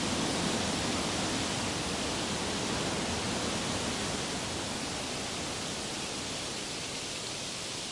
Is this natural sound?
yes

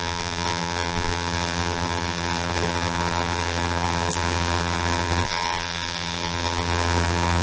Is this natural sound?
no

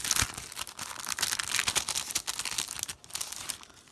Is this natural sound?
yes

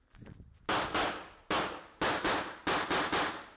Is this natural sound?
yes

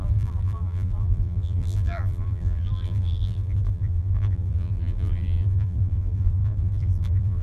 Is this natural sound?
no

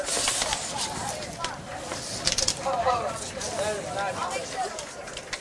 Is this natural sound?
no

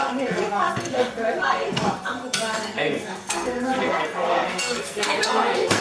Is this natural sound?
no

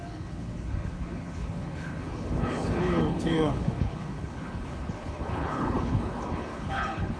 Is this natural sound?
no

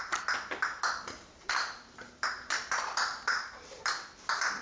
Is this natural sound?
yes